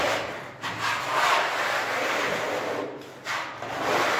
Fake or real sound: real